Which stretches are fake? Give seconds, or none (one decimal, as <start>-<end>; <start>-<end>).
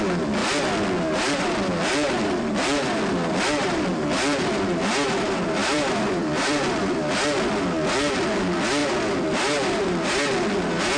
5.6-7.0